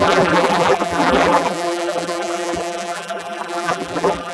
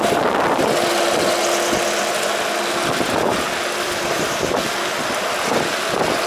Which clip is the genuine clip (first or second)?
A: second